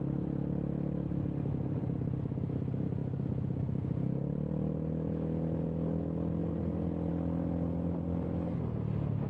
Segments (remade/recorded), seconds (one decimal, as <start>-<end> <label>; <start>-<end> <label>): 0.0-9.3 recorded